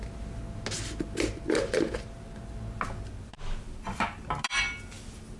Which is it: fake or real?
real